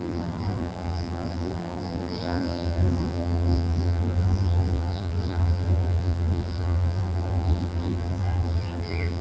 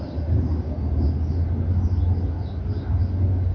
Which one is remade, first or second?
first